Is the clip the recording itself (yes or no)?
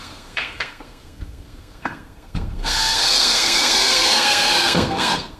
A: no